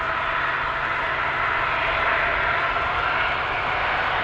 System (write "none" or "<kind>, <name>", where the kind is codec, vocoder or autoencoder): none